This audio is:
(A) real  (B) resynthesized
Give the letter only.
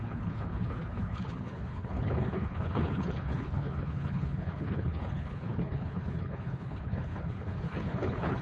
B